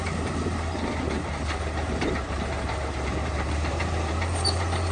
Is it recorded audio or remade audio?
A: remade